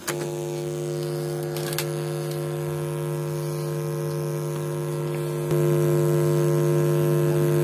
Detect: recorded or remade recorded